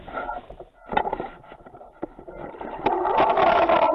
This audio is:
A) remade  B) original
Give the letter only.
B